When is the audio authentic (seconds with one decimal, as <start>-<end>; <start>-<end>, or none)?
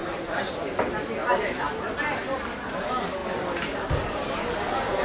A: 0.0-5.0